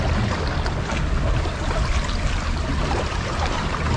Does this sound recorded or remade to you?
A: recorded